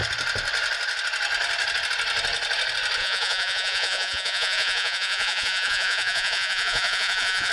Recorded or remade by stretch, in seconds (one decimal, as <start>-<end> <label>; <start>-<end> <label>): 0.0-3.0 recorded; 3.0-7.5 remade